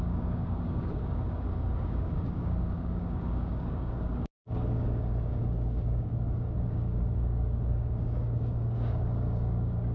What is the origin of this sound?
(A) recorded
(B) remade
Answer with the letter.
B